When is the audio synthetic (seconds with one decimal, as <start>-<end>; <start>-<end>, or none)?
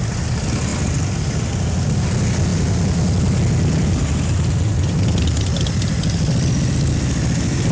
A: none